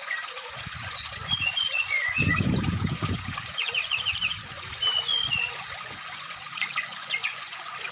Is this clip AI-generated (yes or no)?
yes